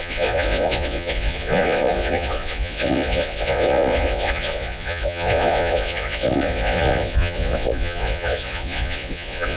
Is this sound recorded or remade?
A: remade